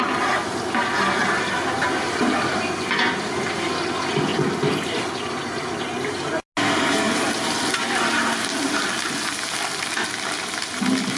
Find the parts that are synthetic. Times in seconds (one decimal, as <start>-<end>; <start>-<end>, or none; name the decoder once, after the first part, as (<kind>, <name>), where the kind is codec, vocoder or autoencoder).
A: none